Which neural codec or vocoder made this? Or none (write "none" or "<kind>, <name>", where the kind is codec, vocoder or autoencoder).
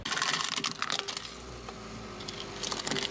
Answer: none